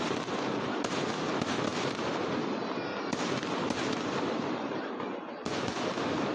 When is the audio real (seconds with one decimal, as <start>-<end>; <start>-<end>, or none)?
0.0-5.2; 5.8-6.3